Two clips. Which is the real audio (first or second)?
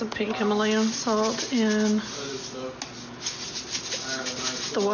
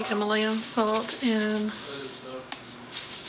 first